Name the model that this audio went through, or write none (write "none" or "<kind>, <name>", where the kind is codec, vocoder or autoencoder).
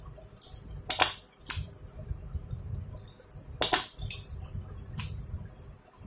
none